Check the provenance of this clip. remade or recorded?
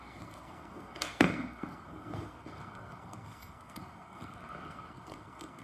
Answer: remade